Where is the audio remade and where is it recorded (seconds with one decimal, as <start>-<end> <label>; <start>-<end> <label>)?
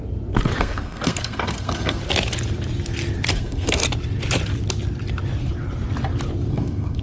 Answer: 0.0-0.6 recorded; 0.6-2.0 remade; 2.0-3.3 recorded; 3.3-3.8 remade; 3.8-6.5 recorded; 6.5-7.0 remade